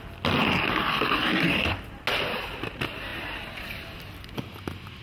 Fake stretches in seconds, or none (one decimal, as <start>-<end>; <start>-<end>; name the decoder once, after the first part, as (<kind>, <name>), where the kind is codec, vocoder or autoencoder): none